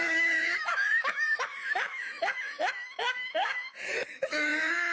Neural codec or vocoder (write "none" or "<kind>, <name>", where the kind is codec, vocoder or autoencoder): autoencoder, DAC-VAE